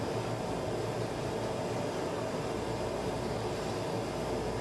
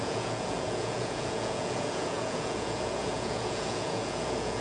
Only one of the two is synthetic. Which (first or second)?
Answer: second